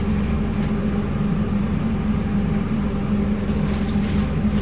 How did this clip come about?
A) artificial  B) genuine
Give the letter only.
B